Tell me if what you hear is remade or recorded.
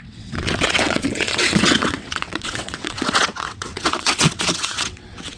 remade